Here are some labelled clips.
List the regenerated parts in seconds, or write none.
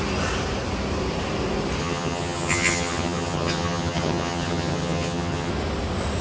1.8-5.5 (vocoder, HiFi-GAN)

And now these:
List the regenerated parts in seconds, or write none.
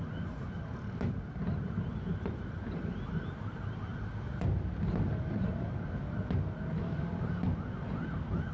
none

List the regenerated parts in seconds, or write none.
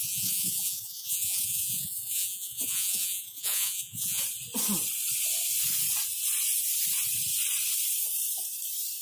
0.0-4.2 (vocoder, Vocos)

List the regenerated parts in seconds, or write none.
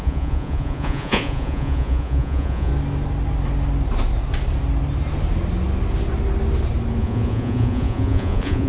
0.0-2.7 (vocoder, Vocos); 7.0-8.7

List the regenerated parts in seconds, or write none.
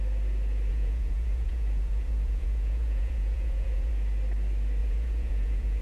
0.7-3.9 (vocoder, Vocos); 4.8-5.8